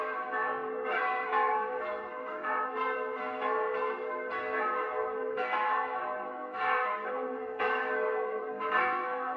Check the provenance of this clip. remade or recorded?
remade